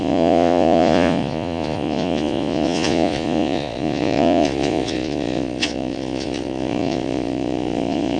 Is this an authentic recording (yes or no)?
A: no